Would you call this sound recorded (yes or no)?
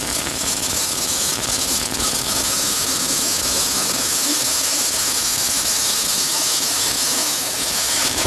no